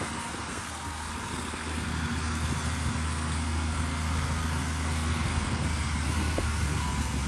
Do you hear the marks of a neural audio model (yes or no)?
yes